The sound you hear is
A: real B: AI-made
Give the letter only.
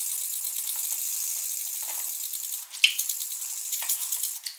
A